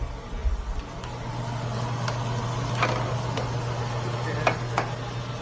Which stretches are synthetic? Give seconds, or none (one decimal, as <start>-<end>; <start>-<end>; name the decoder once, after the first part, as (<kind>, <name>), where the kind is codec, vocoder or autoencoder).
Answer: none